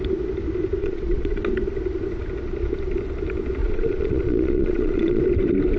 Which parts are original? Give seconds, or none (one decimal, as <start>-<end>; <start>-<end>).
0.0-0.8; 1.4-3.6; 5.2-5.8